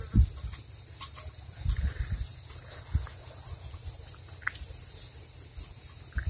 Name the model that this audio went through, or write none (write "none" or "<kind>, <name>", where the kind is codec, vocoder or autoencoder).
none